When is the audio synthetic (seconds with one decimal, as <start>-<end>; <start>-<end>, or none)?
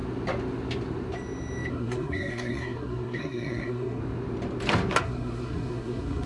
1.7-4.0; 5.0-6.3